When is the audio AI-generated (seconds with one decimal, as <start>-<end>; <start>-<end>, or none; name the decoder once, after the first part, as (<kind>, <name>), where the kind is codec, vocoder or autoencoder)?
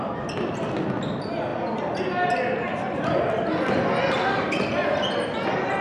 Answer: none